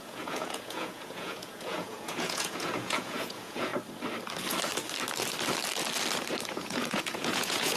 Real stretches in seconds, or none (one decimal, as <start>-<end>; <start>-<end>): 3.7-6.5